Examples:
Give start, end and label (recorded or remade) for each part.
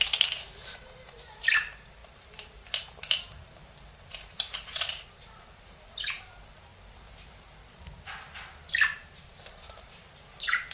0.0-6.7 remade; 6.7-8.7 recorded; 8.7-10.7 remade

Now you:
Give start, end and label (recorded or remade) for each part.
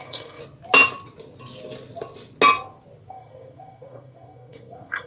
0.0-0.4 remade; 0.4-3.1 recorded; 3.1-5.1 remade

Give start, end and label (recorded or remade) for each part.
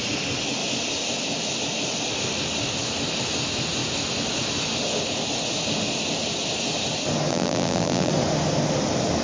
0.0-7.3 recorded; 7.3-8.1 remade; 8.1-9.2 recorded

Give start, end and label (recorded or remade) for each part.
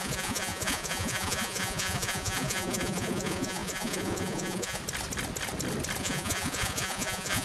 0.0-4.8 remade; 4.8-6.0 recorded; 6.0-7.4 remade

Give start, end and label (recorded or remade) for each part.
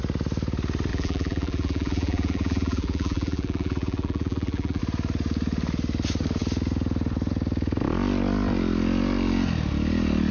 0.0-0.9 recorded; 0.9-4.8 remade; 4.8-10.3 recorded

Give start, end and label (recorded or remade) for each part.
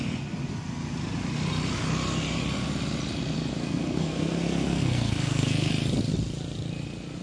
0.0-3.6 recorded; 3.6-5.7 remade; 5.7-7.2 recorded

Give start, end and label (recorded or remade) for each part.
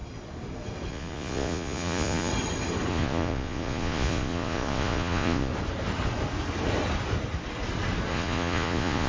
0.0-0.9 recorded; 0.9-2.3 remade; 2.3-2.9 recorded; 2.9-5.5 remade; 5.5-8.1 recorded; 8.1-9.1 remade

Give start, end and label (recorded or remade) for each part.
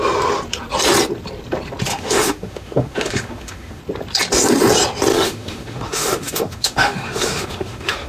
0.0-1.9 recorded; 1.9-3.8 remade; 3.8-5.1 recorded; 5.1-8.1 remade